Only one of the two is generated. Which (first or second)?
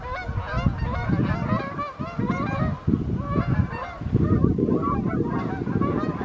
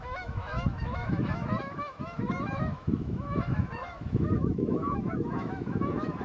second